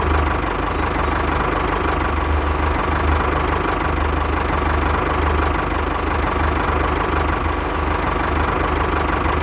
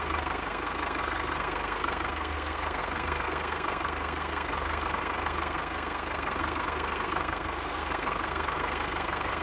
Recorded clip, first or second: first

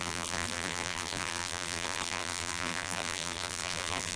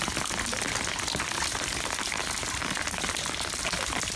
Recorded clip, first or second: second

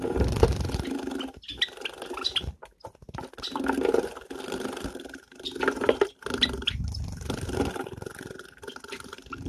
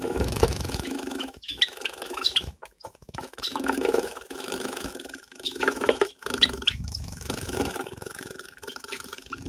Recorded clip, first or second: first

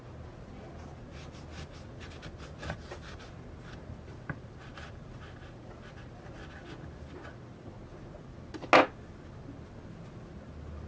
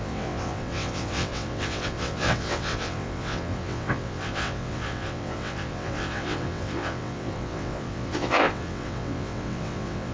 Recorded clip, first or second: first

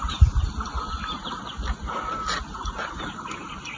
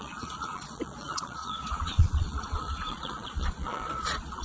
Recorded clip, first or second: first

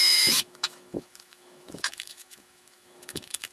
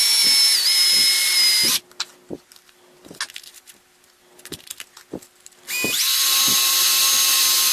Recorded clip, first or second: second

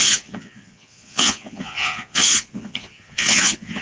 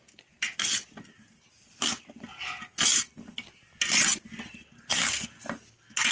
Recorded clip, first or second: second